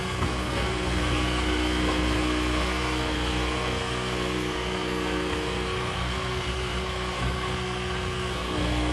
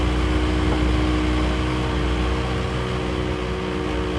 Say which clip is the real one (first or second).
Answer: second